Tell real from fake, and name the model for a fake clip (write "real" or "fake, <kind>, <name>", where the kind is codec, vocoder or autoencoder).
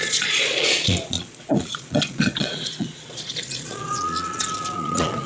fake, vocoder, Vocos